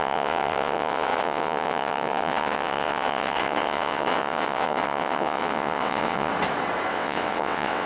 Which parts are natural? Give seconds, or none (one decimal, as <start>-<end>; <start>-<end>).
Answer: 6.3-6.9